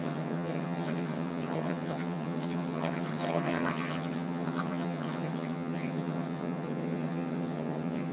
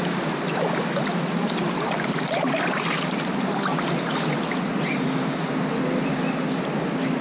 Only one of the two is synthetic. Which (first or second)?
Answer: first